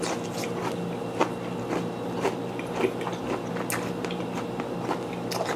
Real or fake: real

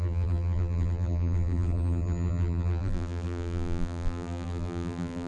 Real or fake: fake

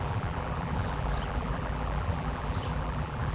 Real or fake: fake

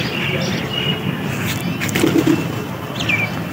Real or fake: real